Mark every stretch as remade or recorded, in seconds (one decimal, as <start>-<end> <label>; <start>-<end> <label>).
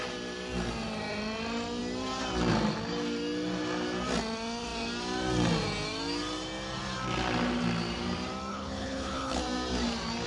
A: 0.0-8.5 recorded; 8.5-9.4 remade; 9.4-10.3 recorded